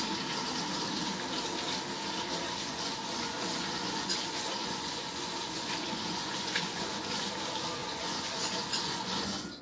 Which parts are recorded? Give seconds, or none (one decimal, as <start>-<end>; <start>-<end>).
0.0-2.4; 7.3-7.8